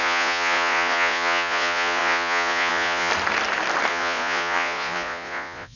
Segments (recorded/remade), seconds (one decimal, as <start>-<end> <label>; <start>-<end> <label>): 0.0-3.1 remade; 3.1-3.9 recorded; 3.9-5.8 remade